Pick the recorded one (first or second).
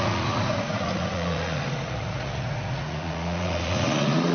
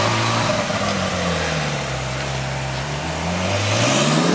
second